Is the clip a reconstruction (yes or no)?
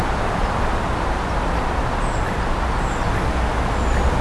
no